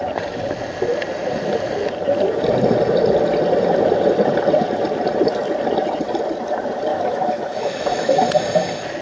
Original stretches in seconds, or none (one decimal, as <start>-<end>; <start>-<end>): 0.0-6.9; 8.3-9.0